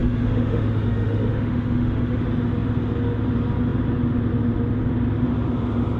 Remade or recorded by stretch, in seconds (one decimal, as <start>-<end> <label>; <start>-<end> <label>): 0.0-2.2 remade; 2.2-6.0 recorded